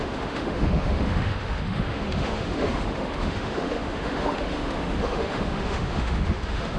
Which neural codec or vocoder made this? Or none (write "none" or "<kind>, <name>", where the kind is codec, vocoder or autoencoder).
autoencoder, DAC-VAE